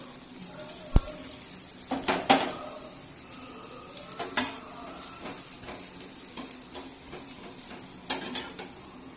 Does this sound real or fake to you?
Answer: real